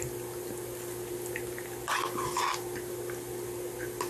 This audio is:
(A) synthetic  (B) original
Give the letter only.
B